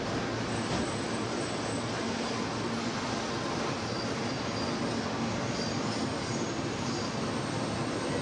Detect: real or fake real